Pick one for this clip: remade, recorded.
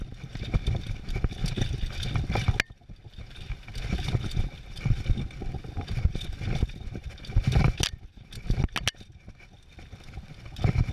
recorded